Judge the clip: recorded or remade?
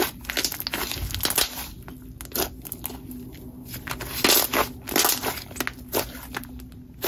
recorded